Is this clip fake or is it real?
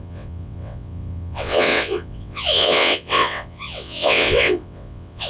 fake